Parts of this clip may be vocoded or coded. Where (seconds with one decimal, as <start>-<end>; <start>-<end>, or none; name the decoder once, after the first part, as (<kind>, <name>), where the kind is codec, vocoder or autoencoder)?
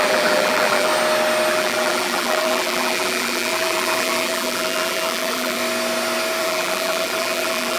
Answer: 0.0-0.9 (vocoder, BigVGAN v2); 1.5-5.6; 6.4-7.8